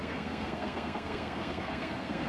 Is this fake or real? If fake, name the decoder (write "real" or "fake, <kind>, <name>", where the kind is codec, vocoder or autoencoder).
fake, codec, SNAC